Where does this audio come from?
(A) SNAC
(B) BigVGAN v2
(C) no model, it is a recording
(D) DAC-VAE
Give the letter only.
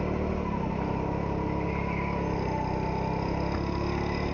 C